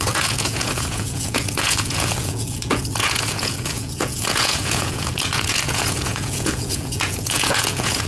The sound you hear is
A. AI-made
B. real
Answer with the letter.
A